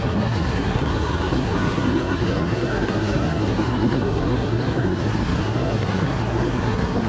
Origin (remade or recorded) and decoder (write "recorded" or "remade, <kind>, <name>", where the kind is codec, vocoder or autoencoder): remade, codec, SNAC